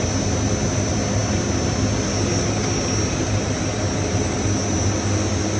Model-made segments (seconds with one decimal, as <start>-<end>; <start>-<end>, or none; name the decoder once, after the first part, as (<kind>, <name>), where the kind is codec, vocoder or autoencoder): none

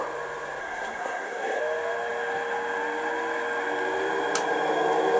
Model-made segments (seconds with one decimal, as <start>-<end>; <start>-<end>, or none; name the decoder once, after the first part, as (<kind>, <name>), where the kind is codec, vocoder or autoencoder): 0.6-1.6 (codec, SNAC)

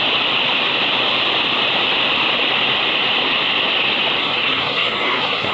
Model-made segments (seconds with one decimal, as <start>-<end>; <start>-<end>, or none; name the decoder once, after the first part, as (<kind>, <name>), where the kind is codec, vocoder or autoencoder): 4.2-5.5 (codec, SNAC)

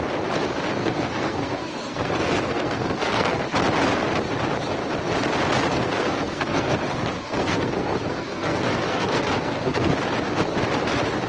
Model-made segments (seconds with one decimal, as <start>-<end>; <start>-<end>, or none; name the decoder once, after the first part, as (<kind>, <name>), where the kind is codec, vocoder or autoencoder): 0.8-3.4 (codec, SNAC); 5.7-9.9

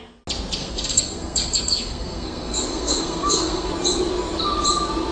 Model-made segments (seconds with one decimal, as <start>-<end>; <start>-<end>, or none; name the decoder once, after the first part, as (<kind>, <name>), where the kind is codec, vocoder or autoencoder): 0.6-3.7 (codec, SNAC)